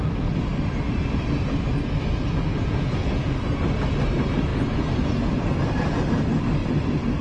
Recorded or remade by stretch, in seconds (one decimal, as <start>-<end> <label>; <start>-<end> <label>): 0.0-2.5 recorded; 2.5-3.3 remade; 3.3-7.2 recorded